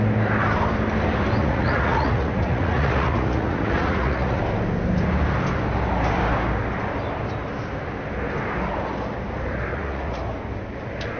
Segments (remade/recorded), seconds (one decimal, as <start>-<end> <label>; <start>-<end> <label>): 0.0-1.4 recorded; 1.4-4.4 remade; 4.4-9.7 recorded; 9.7-10.2 remade; 10.2-11.2 recorded